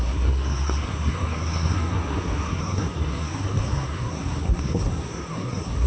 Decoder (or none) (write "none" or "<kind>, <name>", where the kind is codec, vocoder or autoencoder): codec, SNAC